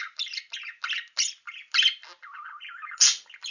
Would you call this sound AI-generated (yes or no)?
no